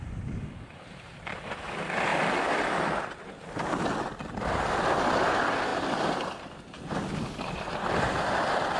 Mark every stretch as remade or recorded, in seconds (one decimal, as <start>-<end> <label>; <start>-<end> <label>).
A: 0.0-5.7 remade; 5.7-6.9 recorded; 6.9-8.8 remade